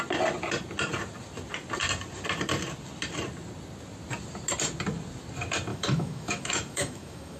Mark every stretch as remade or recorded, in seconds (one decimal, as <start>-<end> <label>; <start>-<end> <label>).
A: 0.0-5.7 recorded; 5.7-7.4 remade